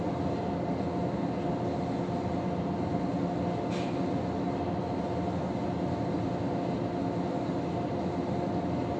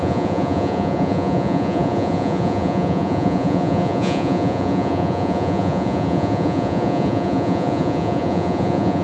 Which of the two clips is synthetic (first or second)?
second